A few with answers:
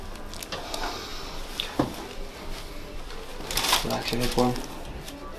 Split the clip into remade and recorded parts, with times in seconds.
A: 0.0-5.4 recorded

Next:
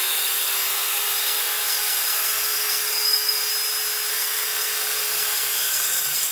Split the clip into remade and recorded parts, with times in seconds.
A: 0.0-3.5 remade; 3.5-4.1 recorded; 4.1-6.3 remade

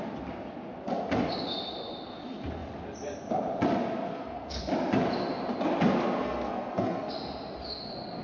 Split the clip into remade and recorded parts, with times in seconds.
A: 0.0-4.1 recorded; 4.1-4.6 remade; 4.6-6.2 recorded; 6.2-7.1 remade; 7.1-8.2 recorded